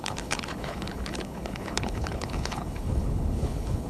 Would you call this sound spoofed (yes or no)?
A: yes